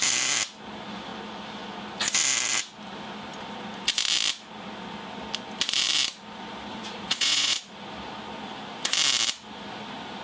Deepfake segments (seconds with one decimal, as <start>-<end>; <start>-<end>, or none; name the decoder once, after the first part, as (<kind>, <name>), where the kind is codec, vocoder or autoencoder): 6.7-7.6 (vocoder, Vocos)